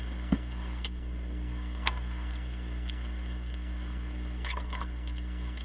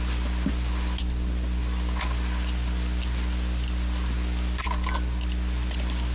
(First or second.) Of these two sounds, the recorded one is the second